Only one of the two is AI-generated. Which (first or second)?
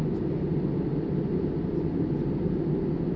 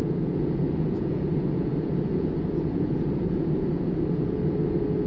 second